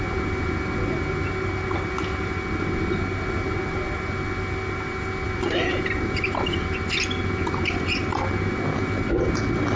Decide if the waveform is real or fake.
real